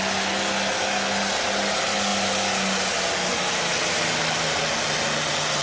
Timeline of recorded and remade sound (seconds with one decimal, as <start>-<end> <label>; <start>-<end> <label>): 0.0-3.3 recorded; 3.3-4.7 remade; 4.7-5.6 recorded